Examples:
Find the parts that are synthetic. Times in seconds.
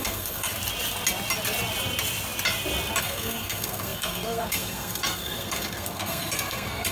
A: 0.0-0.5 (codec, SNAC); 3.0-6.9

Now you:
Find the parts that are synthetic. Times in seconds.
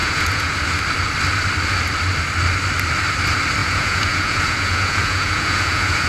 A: 0.0-0.6 (vocoder, Vocos); 3.6-6.1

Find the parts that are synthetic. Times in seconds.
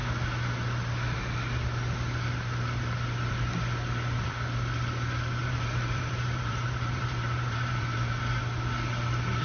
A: 5.4-8.2 (vocoder, BigVGAN v2)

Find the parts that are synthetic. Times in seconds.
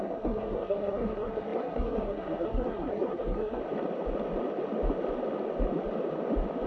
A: 0.0-3.6 (codec, SNAC)